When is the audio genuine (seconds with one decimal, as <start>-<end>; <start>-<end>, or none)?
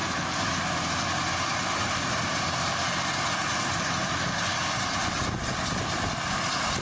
0.0-6.8